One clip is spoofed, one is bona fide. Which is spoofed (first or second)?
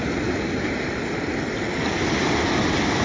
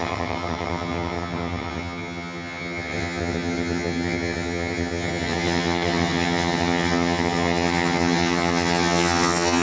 second